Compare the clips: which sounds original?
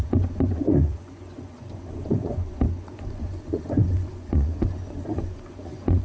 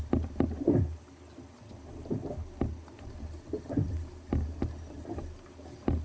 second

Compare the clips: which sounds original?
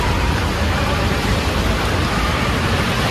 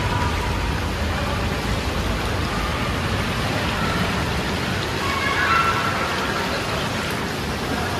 second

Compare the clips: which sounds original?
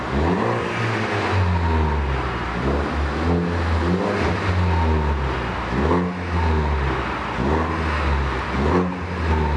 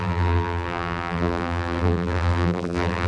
first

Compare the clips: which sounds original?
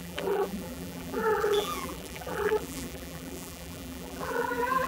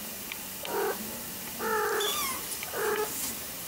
second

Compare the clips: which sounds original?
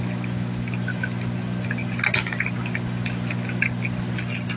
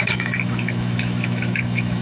first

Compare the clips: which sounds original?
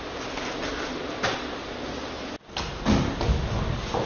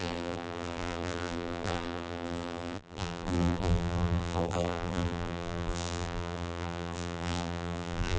first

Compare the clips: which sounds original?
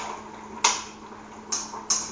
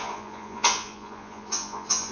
first